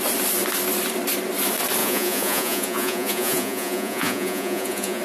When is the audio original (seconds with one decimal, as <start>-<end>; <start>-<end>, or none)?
0.0-1.8